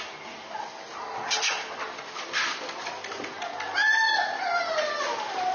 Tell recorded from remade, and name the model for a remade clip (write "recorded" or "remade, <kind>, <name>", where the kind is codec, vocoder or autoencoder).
recorded